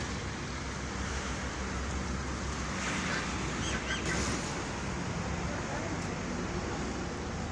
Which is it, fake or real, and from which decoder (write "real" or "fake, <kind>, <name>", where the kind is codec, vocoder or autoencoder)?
real